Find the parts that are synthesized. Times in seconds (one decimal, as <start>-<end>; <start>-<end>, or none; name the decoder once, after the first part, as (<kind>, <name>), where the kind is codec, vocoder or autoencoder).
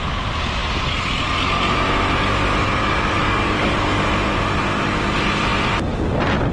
2.8-4.0 (codec, DAC)